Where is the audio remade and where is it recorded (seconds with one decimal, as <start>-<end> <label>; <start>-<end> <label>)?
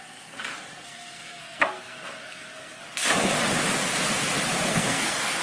0.0-2.8 remade; 2.8-4.7 recorded; 4.7-5.4 remade